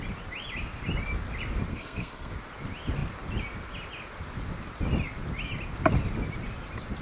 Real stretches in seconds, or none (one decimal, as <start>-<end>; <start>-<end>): 0.0-1.7; 2.3-7.0